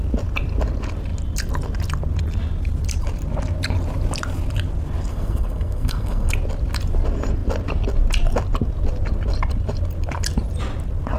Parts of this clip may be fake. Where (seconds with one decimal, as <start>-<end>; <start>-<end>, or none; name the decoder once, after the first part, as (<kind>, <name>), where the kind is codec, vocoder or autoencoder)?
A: 5.1-6.3 (codec, SNAC)